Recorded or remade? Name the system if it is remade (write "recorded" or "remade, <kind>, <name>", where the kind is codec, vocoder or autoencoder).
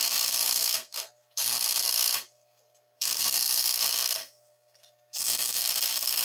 remade, codec, SNAC